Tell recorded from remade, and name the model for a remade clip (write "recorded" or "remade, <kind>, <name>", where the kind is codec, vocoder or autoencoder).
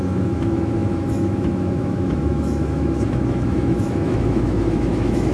remade, autoencoder, DAC-VAE